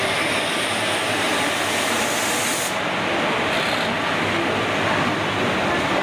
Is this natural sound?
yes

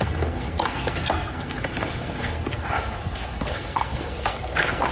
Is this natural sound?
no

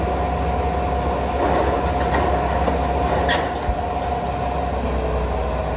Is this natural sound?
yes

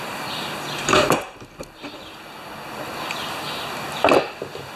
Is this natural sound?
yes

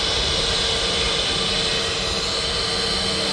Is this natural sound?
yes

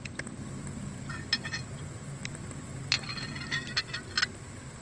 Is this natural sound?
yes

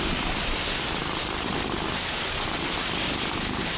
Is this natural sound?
yes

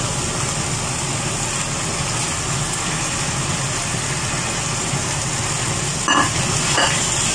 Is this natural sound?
yes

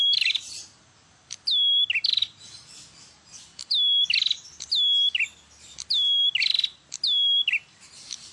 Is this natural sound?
yes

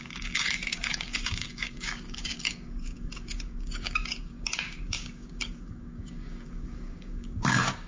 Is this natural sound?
no